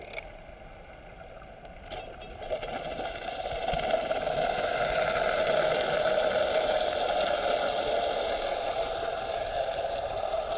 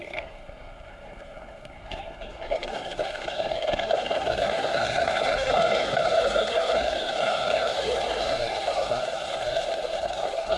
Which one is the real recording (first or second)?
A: first